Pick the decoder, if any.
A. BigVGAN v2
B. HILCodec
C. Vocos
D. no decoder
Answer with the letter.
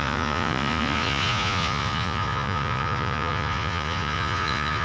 C